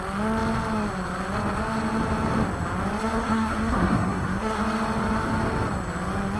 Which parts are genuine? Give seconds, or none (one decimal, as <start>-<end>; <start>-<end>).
0.0-3.0; 4.6-6.4